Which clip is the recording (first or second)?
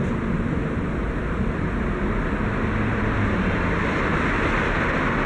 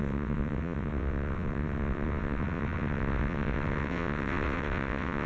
first